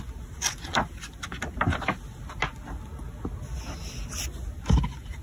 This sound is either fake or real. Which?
real